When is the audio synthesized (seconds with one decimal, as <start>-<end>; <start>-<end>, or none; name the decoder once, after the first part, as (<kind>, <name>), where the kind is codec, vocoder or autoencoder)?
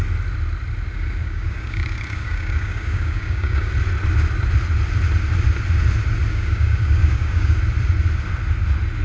1.2-3.7 (codec, DAC); 6.3-7.6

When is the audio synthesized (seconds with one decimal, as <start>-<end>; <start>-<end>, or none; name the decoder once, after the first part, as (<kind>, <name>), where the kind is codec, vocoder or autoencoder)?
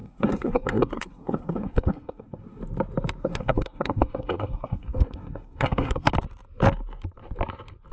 0.0-2.6 (codec, SNAC); 3.2-6.1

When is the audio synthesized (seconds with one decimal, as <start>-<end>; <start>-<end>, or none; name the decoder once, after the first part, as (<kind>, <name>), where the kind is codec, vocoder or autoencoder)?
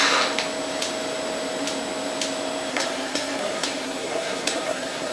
2.7-5.1 (codec, SNAC)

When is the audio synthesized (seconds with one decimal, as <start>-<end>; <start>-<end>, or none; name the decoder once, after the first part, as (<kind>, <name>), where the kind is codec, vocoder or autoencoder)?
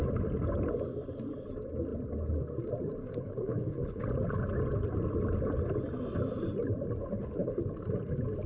3.0-4.0 (codec, HILCodec); 7.0-7.6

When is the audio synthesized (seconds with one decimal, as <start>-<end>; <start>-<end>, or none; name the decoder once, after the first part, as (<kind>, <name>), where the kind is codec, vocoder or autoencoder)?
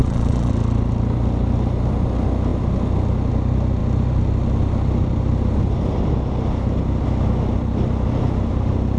0.0-0.5 (vocoder, Vocos)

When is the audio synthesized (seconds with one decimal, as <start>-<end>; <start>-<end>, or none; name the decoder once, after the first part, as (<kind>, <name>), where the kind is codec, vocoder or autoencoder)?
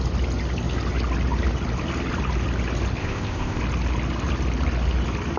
3.0-3.6 (codec, ZipCodec)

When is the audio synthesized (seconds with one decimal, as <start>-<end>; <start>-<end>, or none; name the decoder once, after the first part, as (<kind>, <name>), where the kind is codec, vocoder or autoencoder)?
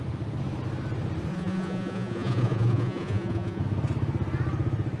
1.3-3.6 (vocoder, Vocos)